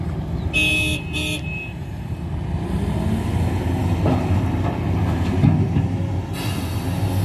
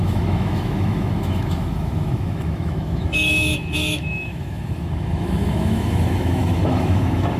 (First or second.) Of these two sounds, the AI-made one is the second